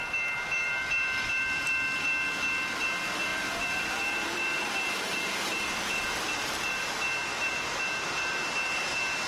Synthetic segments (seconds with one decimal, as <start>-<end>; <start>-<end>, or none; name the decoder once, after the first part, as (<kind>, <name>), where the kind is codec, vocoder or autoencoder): 0.6-1.6 (vocoder, BigVGAN v2); 3.3-6.6; 7.3-9.3

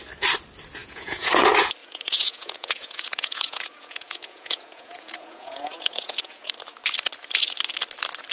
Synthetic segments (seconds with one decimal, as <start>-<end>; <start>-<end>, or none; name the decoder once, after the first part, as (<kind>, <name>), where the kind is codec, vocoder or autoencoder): 0.8-1.3 (vocoder, Vocos); 1.8-6.5

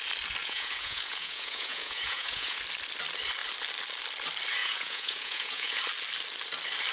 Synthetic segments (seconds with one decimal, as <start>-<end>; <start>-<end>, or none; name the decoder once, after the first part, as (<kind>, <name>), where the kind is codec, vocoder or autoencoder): 0.4-2.6 (vocoder, Vocos); 4.6-5.8